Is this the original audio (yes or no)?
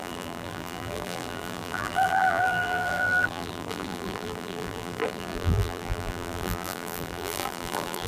no